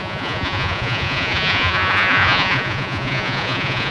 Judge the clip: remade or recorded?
remade